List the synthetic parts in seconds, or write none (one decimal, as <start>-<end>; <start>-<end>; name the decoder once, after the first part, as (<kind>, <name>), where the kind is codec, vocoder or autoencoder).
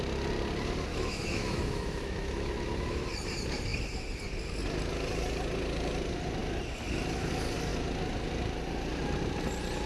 0.9-3.1 (autoencoder, DAC-VAE)